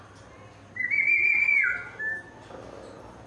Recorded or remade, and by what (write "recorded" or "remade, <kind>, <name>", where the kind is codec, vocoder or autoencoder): recorded